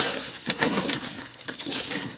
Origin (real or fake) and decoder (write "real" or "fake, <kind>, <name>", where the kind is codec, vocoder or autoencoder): fake, codec, SNAC